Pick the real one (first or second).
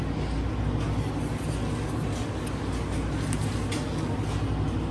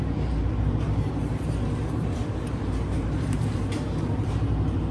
first